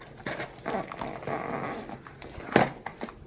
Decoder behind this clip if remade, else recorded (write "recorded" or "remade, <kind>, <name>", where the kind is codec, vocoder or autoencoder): recorded